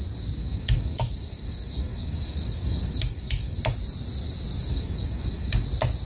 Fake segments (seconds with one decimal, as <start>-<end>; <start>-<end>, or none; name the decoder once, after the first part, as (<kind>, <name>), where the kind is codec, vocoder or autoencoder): 0.4-3.6 (codec, DAC); 4.7-5.5